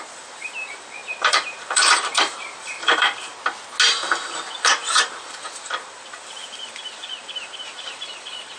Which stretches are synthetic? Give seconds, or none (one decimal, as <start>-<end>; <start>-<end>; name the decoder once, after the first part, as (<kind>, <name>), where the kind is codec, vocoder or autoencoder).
0.0-3.3 (vocoder, BigVGAN v2); 3.9-8.6